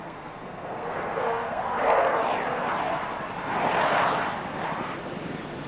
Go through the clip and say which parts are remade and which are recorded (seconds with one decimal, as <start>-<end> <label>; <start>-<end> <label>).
0.0-2.2 remade; 2.2-5.7 recorded